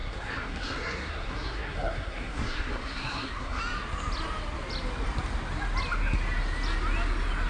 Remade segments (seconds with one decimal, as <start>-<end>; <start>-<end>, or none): 0.0-3.6